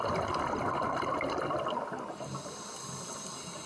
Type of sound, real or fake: real